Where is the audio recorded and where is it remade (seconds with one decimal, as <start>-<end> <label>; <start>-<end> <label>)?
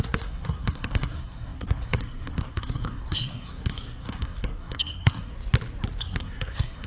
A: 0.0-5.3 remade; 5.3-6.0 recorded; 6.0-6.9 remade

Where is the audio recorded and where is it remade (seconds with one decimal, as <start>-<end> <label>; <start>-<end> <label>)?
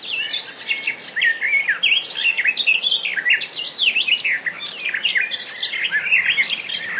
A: 0.0-7.0 recorded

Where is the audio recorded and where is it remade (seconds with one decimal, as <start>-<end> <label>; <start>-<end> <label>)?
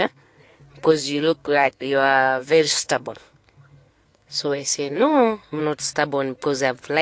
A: 0.0-0.4 remade; 0.4-0.9 recorded; 0.9-5.6 remade; 5.6-7.0 recorded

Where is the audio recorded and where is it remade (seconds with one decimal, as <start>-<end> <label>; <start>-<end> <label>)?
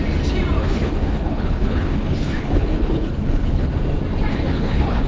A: 0.0-0.6 recorded; 0.6-3.7 remade; 3.7-4.3 recorded; 4.3-5.1 remade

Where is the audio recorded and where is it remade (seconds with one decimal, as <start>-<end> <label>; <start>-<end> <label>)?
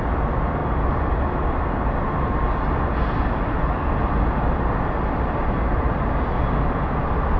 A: 0.0-7.4 recorded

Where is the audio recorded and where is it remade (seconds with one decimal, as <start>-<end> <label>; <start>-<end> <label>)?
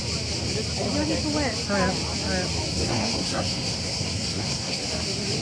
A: 0.0-2.7 recorded; 2.7-4.8 remade; 4.8-5.4 recorded